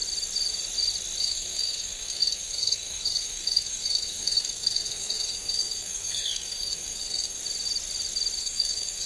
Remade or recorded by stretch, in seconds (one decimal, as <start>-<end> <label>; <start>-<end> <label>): 0.0-1.2 recorded; 1.2-7.4 remade; 7.4-8.4 recorded; 8.4-9.1 remade